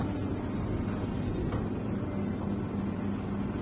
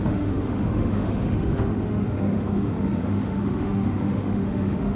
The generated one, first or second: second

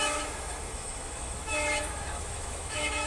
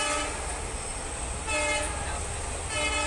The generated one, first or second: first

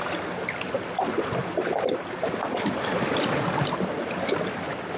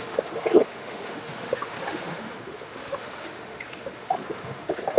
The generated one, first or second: second